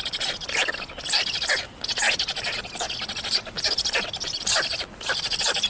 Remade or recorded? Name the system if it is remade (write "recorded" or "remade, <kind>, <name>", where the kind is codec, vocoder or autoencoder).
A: recorded